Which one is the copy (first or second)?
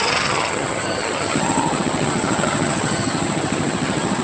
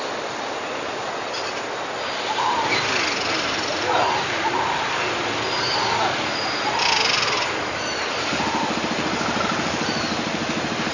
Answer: first